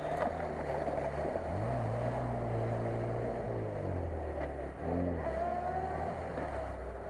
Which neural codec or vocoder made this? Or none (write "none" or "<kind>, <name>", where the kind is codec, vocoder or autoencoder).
none